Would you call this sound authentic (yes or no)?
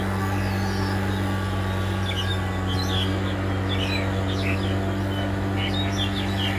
yes